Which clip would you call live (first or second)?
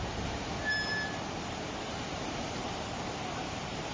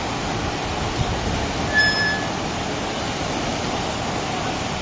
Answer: second